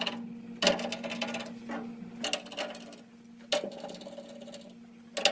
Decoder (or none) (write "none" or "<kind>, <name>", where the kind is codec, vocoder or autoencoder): none